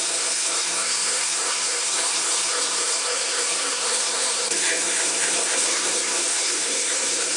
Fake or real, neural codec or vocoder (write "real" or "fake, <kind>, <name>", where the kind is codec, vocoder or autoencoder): fake, codec, SNAC